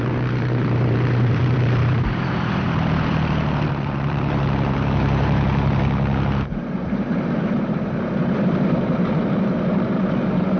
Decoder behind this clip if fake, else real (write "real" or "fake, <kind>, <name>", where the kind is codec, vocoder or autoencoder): fake, vocoder, BigVGAN v2